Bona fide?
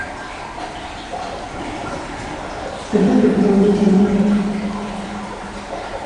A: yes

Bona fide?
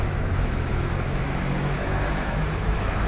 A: no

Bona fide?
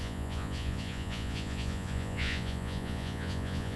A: no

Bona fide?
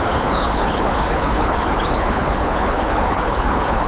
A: no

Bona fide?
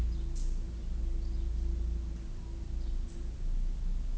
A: yes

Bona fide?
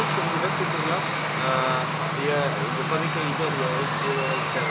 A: yes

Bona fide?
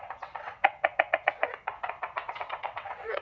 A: no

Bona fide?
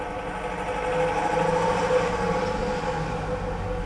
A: yes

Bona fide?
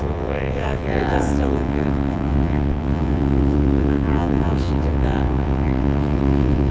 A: no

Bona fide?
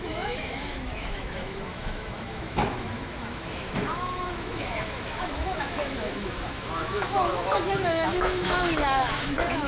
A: no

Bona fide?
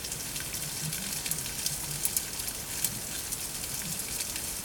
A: yes